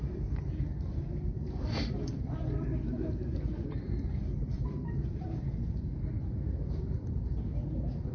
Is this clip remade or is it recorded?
remade